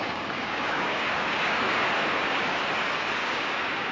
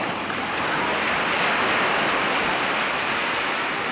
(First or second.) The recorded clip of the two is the second